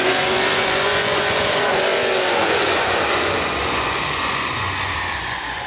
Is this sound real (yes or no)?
no